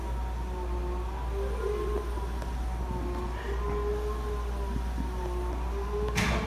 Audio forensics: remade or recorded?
recorded